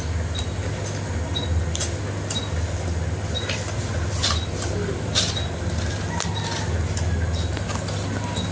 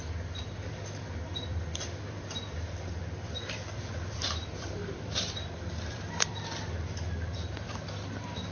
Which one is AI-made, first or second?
second